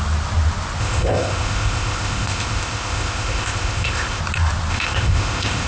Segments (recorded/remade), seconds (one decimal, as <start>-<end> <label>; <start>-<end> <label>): 0.0-0.8 recorded; 0.8-4.2 remade; 4.2-4.7 recorded; 4.7-5.7 remade